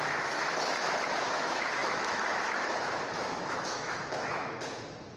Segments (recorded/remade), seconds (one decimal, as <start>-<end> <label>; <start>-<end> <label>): 0.0-5.2 remade